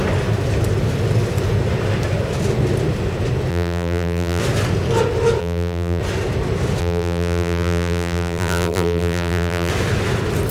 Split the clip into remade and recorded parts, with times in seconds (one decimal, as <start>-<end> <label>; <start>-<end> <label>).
0.0-3.5 recorded; 3.5-4.4 remade; 4.4-5.4 recorded; 5.4-6.0 remade; 6.0-6.8 recorded; 6.8-9.7 remade; 9.7-10.5 recorded